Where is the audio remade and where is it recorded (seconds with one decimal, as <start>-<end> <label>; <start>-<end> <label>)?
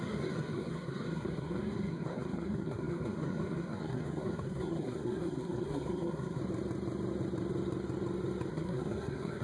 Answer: 0.0-6.4 remade; 6.4-8.5 recorded; 8.5-9.4 remade